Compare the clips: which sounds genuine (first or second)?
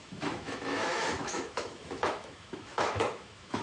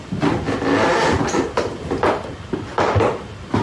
second